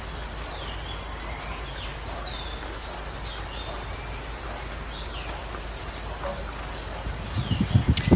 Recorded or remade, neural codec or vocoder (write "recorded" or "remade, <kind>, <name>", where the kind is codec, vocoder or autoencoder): recorded